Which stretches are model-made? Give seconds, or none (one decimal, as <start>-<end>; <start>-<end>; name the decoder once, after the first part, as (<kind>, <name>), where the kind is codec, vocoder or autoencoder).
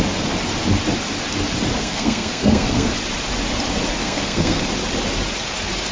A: 1.8-2.9 (codec, SNAC); 4.0-4.6